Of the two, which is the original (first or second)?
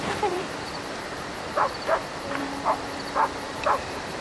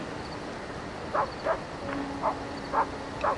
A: second